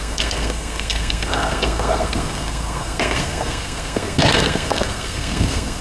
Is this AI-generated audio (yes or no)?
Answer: yes